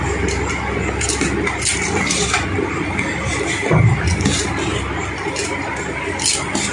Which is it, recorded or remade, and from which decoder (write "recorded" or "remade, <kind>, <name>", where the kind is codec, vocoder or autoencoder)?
recorded